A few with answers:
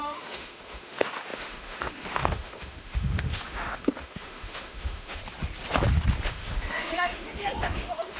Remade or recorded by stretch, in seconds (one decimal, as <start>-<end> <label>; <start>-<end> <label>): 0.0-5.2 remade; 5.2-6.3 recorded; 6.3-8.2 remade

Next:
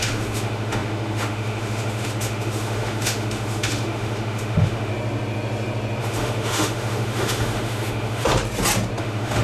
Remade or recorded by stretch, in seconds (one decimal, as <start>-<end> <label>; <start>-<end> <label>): 0.0-4.9 remade; 4.9-6.0 recorded; 6.0-8.3 remade; 8.3-9.0 recorded; 9.0-9.4 remade

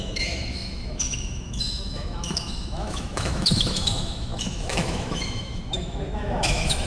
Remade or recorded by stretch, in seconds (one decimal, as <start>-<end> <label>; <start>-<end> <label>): 0.0-6.9 remade

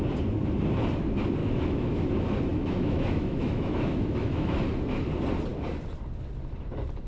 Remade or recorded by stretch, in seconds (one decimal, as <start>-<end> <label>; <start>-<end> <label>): 0.0-1.4 recorded; 1.4-2.1 remade; 2.1-2.5 recorded; 2.5-4.6 remade; 4.6-7.1 recorded

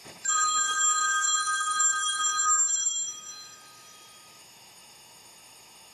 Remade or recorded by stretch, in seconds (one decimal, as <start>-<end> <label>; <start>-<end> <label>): 0.0-5.9 remade